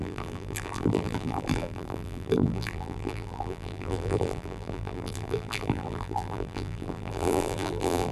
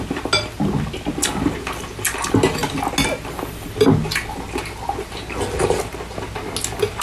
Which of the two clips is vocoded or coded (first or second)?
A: first